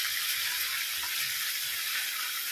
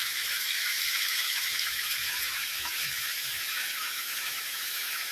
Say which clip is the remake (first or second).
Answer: second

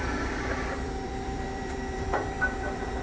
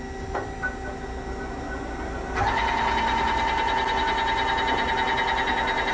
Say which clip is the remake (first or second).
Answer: first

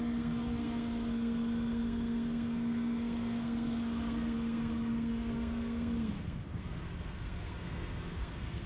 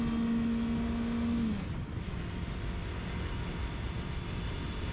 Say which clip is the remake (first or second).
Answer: first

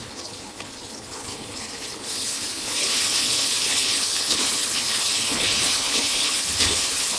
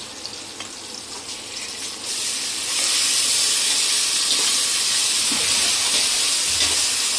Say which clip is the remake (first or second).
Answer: first